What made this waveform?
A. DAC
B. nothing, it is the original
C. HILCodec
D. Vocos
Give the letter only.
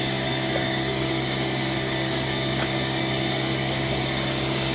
A